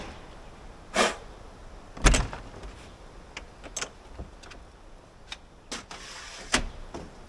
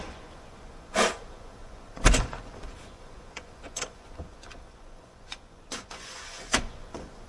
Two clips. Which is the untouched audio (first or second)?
first